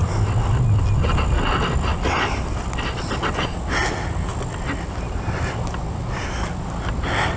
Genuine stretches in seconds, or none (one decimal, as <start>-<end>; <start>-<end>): 0.0-7.4